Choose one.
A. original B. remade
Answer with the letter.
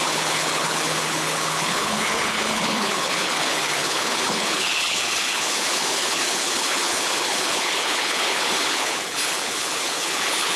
B